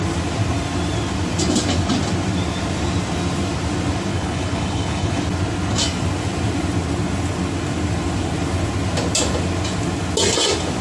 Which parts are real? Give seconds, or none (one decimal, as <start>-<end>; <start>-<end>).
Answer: 0.0-4.1; 5.2-10.8